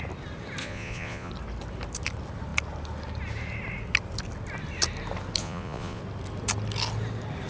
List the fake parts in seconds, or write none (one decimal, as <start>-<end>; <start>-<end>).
0.6-1.3; 5.4-6.0